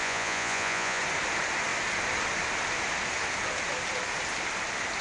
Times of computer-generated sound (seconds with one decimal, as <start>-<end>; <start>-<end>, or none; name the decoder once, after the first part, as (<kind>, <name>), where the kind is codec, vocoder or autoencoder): 0.0-1.0 (vocoder, Vocos)